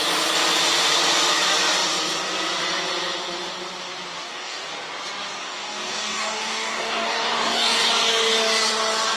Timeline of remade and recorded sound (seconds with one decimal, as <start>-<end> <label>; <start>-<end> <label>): 0.0-4.2 recorded; 4.2-4.7 remade; 4.7-5.4 recorded; 5.4-7.9 remade; 7.9-9.2 recorded